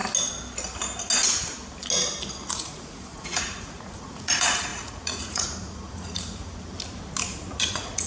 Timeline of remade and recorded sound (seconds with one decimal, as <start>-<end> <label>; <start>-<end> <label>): 0.0-2.5 recorded; 2.5-6.7 remade; 6.7-7.6 recorded; 7.6-8.1 remade

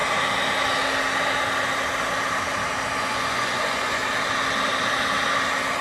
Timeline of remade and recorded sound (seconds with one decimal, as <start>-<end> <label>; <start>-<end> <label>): 0.0-3.0 recorded; 3.0-4.0 remade; 4.0-5.8 recorded

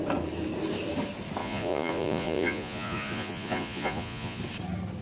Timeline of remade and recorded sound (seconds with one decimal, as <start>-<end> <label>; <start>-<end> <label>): 0.0-1.4 recorded; 1.4-4.4 remade; 4.4-5.0 recorded

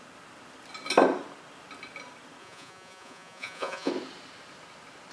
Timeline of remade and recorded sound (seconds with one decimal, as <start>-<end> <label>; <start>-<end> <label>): 0.0-2.4 recorded; 2.4-3.9 remade; 3.9-5.1 recorded

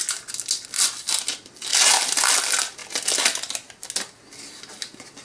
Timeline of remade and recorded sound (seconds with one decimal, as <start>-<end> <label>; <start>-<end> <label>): 0.0-5.2 recorded